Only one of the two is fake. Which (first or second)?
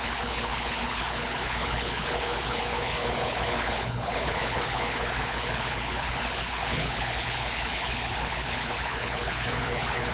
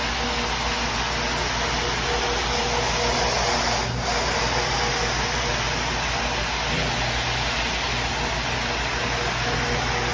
first